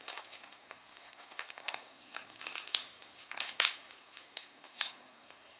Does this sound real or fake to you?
fake